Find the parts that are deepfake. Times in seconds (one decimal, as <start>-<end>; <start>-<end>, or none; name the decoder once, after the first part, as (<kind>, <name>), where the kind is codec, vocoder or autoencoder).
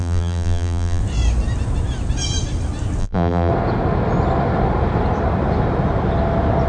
0.0-1.0 (vocoder, BigVGAN v2); 3.0-3.5